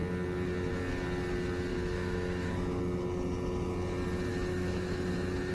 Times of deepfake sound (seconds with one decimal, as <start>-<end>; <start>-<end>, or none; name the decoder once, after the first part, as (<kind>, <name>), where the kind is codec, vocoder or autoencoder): 1.7-2.8 (autoencoder, DAC-VAE); 4.3-5.5